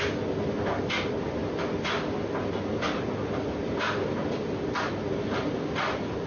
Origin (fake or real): real